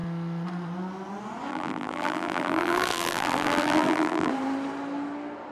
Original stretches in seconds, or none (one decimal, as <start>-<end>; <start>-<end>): 0.0-1.5; 4.3-5.5